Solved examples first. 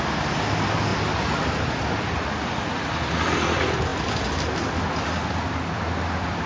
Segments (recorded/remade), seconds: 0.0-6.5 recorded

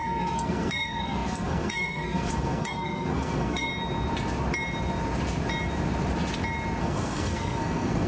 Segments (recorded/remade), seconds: 0.0-3.7 remade; 3.7-6.8 recorded; 6.8-8.1 remade

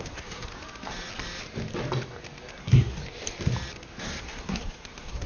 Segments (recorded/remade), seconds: 0.0-0.5 remade; 0.5-2.6 recorded; 2.6-3.0 remade; 3.0-4.0 recorded; 4.0-5.3 remade

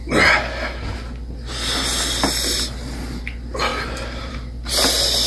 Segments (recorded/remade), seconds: 0.0-5.3 recorded

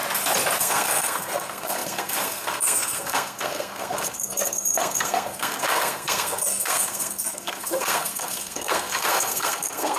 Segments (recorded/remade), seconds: 0.0-0.6 recorded; 0.6-10.0 remade

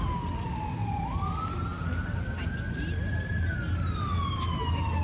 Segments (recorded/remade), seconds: 0.0-5.0 recorded

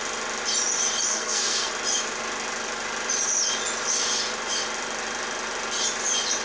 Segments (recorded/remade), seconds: 0.0-1.1 recorded; 1.1-1.7 remade; 1.7-6.4 recorded